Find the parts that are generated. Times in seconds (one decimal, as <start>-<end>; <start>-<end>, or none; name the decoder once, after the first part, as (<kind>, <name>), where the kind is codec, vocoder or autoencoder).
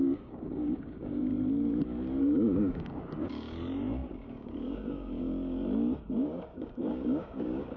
0.0-1.3 (codec, DAC); 2.2-7.8